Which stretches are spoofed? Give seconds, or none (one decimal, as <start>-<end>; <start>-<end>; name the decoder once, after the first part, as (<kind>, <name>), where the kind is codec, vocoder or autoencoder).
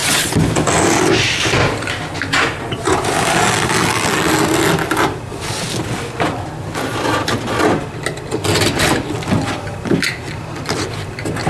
none